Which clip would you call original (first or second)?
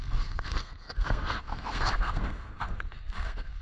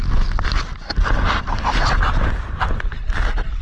second